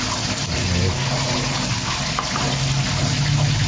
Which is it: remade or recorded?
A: recorded